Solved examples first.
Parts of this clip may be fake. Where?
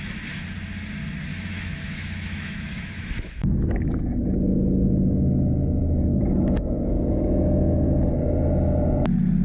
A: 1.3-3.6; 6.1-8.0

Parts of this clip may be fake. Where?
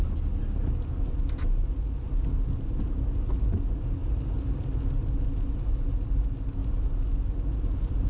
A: 4.0-4.6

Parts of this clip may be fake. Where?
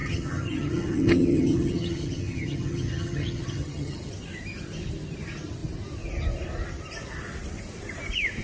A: 0.0-4.1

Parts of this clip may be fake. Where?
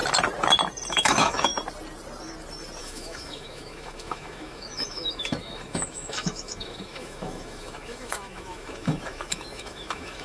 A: 0.9-1.5; 2.8-10.2